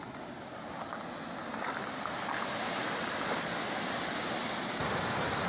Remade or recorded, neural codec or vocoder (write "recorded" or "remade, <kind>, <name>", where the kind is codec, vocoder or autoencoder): recorded